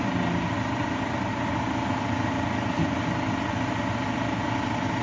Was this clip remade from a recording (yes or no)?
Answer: no